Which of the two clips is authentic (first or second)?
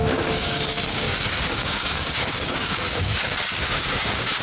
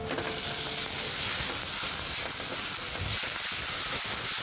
second